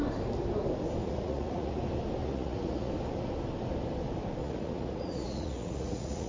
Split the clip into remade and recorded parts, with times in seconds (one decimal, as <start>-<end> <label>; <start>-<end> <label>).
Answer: 0.0-1.0 recorded; 1.0-1.8 remade; 1.8-2.2 recorded; 2.2-2.9 remade; 2.9-4.4 recorded; 4.4-6.3 remade